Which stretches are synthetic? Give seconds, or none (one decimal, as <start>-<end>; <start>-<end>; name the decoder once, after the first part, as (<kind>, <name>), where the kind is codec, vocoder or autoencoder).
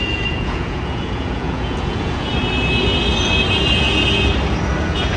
0.0-2.3 (vocoder, Vocos); 4.8-5.2